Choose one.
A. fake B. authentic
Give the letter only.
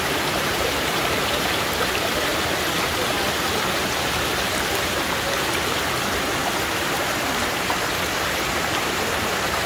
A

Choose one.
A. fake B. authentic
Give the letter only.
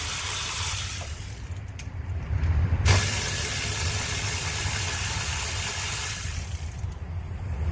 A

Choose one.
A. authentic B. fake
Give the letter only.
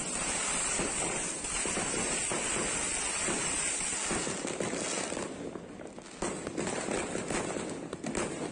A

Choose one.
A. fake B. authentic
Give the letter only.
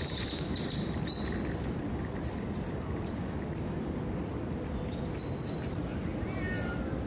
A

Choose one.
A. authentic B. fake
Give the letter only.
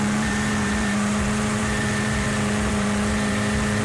B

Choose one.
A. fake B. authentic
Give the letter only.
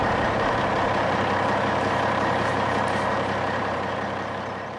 A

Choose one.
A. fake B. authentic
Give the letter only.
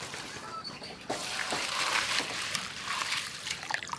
A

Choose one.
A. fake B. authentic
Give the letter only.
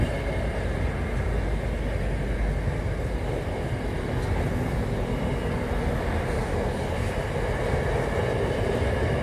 B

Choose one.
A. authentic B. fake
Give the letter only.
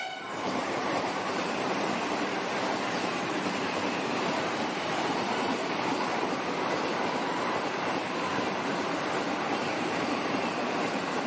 B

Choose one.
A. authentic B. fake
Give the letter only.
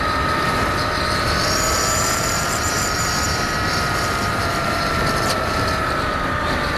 B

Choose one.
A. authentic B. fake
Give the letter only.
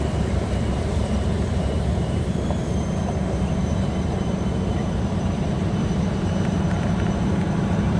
B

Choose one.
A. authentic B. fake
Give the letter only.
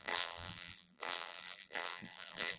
B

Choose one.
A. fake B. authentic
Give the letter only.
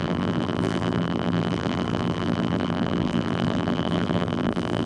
A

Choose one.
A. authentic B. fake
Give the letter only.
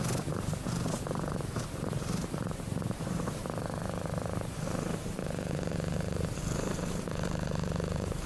B